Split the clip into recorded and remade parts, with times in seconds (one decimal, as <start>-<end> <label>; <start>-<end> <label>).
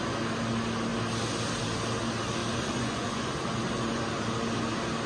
0.0-2.4 recorded; 2.4-4.0 remade; 4.0-5.1 recorded